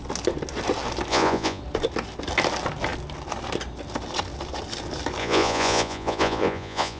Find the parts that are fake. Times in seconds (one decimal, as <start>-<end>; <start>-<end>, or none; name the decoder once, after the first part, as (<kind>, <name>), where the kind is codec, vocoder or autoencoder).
1.1-1.6 (vocoder, Vocos); 5.2-7.0